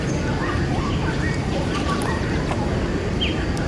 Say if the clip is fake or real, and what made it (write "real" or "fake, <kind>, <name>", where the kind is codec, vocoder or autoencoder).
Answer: real